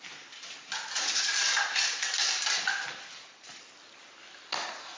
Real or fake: real